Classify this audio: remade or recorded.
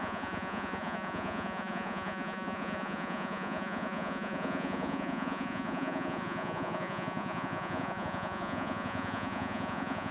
remade